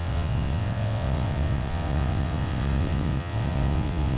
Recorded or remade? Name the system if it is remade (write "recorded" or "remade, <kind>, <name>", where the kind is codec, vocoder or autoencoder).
remade, vocoder, WaveNeXt